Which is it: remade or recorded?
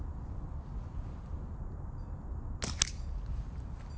recorded